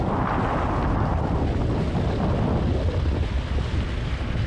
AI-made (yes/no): no